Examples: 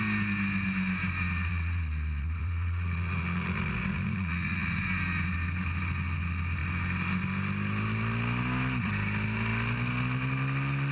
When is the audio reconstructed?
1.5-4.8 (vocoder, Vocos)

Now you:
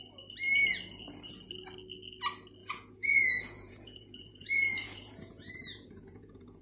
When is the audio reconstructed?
2.6-6.6 (vocoder, Vocos)

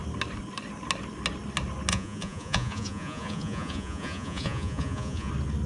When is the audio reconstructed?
1.9-5.3 (vocoder, Vocos)

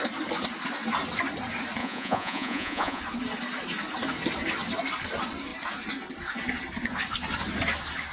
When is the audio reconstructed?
1.8-3.0 (vocoder, Vocos)

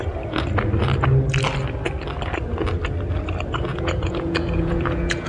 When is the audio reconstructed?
3.7-5.3 (vocoder, Vocos)